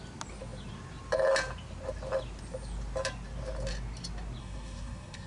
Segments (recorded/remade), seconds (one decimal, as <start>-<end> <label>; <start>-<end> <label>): 0.0-4.4 recorded; 4.4-5.3 remade